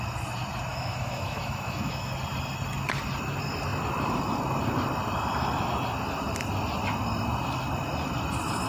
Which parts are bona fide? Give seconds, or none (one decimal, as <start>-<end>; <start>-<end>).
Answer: 0.0-0.7; 2.1-8.7